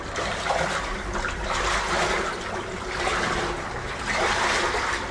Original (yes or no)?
yes